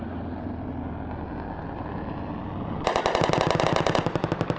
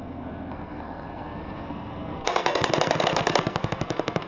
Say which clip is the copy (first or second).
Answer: second